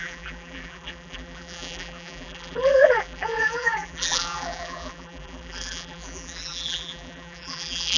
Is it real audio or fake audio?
fake